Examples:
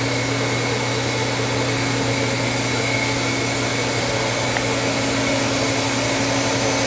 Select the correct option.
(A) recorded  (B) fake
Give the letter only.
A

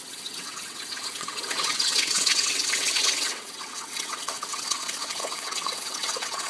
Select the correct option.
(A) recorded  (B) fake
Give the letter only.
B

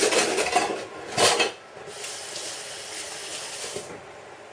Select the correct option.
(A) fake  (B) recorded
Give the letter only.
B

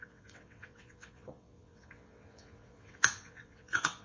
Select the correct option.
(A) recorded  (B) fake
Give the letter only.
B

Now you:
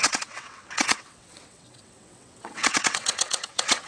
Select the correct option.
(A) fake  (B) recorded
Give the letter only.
A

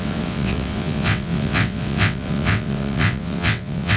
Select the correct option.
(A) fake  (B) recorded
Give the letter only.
A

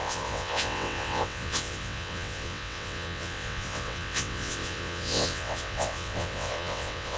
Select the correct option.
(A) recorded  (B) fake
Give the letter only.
B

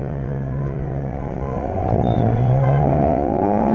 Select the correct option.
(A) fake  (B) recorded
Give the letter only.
A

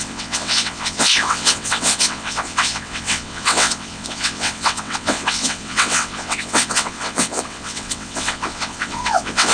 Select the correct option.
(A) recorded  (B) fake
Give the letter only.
B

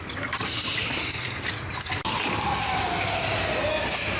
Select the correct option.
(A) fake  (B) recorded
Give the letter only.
B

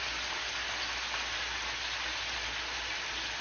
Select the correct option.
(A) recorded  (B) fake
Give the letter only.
A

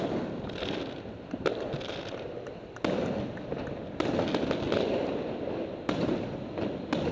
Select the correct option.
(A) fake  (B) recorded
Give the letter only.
B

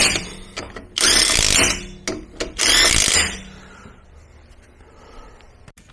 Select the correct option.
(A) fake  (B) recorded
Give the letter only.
B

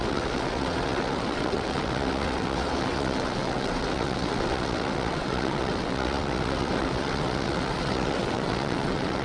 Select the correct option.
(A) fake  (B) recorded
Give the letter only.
A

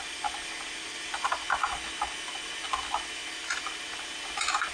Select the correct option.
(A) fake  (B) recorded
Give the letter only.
B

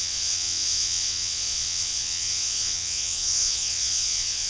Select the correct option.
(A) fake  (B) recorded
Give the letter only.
A